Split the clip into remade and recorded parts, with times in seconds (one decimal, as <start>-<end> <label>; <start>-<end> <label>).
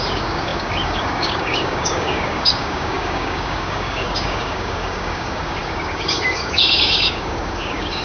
0.0-8.0 remade